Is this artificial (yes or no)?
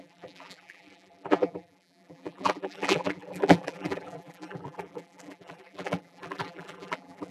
yes